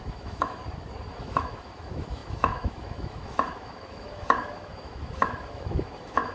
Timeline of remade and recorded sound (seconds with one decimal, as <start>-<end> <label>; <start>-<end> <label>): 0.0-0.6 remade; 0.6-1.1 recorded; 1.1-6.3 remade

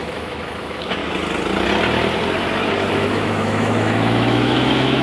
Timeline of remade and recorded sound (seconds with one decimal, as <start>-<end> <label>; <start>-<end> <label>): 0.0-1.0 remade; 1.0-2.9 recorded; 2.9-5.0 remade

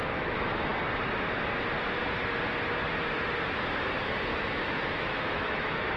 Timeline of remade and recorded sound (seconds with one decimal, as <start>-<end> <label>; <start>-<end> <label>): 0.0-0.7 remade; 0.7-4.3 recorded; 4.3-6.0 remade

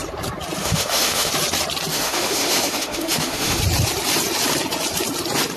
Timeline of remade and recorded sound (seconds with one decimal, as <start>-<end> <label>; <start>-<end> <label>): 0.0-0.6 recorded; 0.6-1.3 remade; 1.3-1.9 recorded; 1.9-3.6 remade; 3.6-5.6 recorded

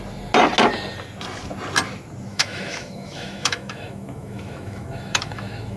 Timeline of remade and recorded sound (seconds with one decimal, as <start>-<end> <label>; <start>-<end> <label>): 0.0-2.3 recorded; 2.3-5.8 remade

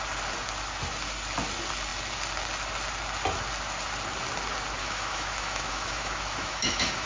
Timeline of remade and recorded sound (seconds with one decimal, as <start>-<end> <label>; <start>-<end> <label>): 0.0-4.8 recorded; 4.8-7.1 remade

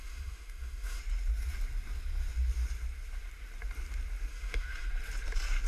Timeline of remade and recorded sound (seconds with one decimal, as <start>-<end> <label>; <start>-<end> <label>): 0.0-1.0 remade; 1.0-4.3 recorded; 4.3-4.9 remade; 4.9-5.7 recorded